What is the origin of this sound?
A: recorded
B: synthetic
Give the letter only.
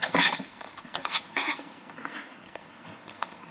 B